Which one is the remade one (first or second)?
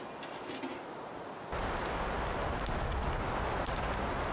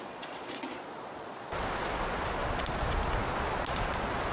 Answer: second